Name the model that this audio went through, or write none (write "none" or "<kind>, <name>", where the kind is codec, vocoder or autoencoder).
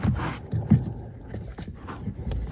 none